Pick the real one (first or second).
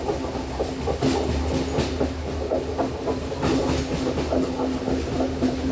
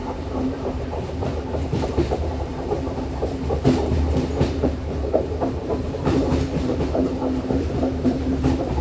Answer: first